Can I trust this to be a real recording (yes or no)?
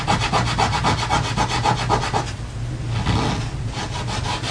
yes